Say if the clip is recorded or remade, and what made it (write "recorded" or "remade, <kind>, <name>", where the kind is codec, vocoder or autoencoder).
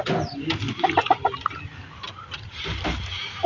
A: recorded